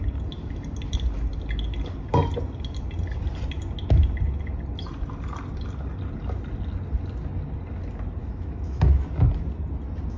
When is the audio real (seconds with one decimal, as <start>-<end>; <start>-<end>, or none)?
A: 0.0-8.2; 9.1-10.2